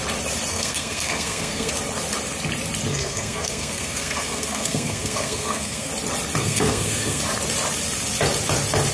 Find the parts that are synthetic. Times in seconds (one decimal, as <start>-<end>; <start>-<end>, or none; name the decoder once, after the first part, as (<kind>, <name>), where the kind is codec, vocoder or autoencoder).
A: 0.5-1.7 (codec, SNAC); 2.9-5.9; 6.4-7.2